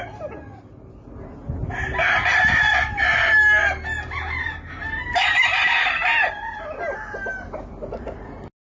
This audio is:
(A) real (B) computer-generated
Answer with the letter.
A